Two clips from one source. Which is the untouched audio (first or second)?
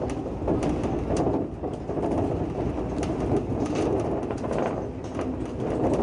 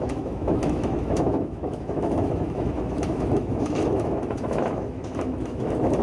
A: first